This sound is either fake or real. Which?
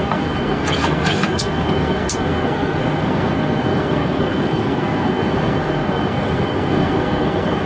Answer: fake